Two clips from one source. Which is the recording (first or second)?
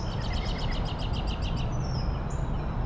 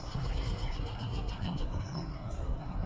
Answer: first